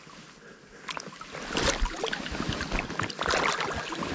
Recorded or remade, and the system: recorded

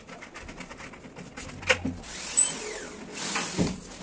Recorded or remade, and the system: recorded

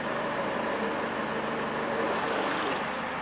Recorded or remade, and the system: recorded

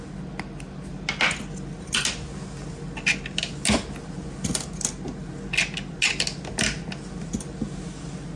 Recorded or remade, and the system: recorded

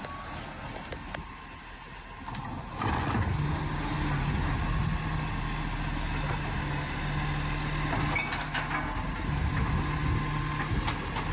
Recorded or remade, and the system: recorded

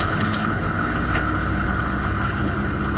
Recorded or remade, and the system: remade, codec, HILCodec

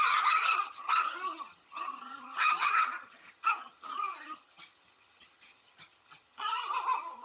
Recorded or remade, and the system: remade, vocoder, HiFi-GAN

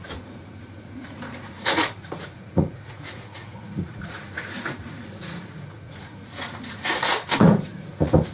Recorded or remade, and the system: remade, vocoder, Vocos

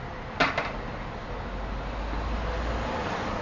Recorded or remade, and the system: recorded